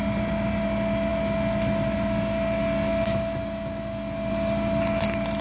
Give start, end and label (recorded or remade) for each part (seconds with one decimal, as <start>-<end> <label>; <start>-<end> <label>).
0.0-5.4 recorded